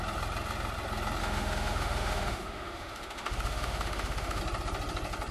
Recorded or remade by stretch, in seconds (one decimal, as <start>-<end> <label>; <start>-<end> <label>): 0.0-1.2 recorded; 1.2-4.4 remade; 4.4-5.3 recorded